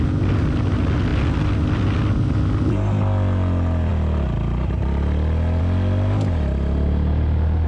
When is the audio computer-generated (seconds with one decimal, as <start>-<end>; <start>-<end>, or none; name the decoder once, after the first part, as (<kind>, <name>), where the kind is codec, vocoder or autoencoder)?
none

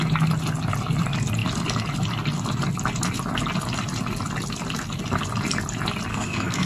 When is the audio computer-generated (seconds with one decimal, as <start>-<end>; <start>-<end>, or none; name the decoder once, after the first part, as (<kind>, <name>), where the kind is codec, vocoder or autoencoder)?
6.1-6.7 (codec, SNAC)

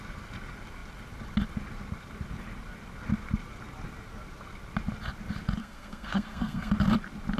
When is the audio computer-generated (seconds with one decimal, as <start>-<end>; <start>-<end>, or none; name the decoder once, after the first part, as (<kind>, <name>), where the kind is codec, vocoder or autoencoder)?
5.6-6.7 (codec, SNAC)

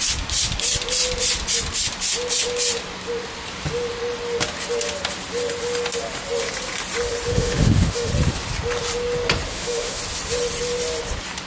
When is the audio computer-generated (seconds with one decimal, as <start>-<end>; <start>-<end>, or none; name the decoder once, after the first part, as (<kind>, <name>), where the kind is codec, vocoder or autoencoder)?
7.3-8.1 (autoencoder, DAC-VAE); 9.5-10.0

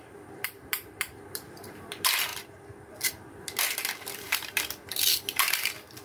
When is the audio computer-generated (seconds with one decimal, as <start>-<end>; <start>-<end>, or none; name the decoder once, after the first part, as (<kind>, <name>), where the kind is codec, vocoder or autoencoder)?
0.0-6.0 (vocoder, BigVGAN v2)

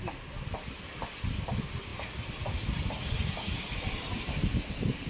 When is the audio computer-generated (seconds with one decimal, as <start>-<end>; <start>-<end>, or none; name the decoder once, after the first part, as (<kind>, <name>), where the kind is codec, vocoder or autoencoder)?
none

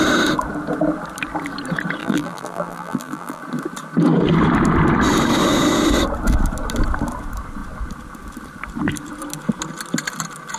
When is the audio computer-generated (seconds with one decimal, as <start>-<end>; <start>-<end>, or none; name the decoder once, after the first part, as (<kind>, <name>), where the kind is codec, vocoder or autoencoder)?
2.0-3.4 (vocoder, BigVGAN v2)

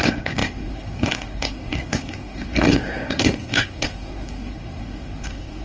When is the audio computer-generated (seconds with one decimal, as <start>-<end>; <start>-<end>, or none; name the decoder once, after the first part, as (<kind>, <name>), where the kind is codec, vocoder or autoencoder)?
0.0-5.6 (codec, SNAC)